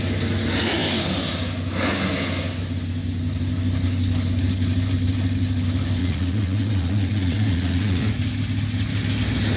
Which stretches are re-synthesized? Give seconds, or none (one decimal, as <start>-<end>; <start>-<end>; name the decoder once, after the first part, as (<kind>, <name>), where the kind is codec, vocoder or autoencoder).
6.0-8.1 (vocoder, Vocos)